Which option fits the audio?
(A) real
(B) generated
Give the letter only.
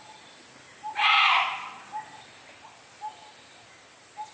A